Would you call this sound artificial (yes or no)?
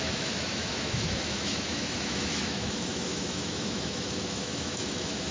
yes